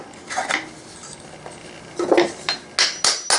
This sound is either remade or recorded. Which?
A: recorded